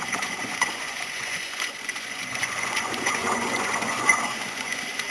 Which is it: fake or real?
fake